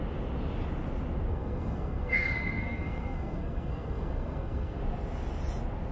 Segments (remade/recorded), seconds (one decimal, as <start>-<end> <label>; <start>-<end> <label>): 0.0-1.3 recorded; 1.3-4.8 remade; 4.8-5.9 recorded